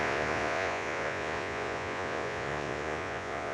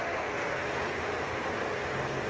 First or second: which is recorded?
second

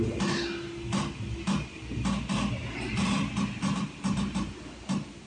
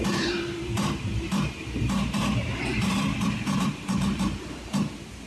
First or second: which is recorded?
first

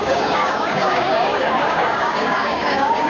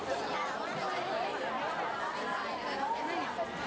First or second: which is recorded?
second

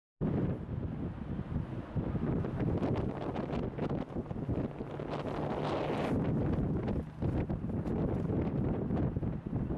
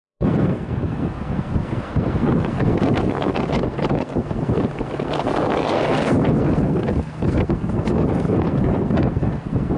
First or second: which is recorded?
first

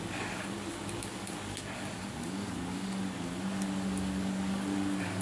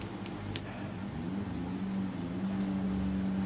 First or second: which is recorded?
second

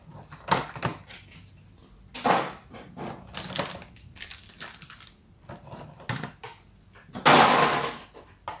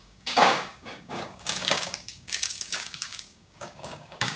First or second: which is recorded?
first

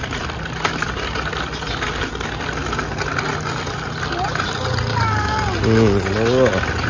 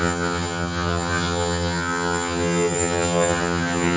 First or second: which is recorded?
first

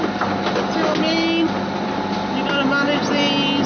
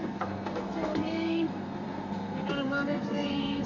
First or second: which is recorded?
first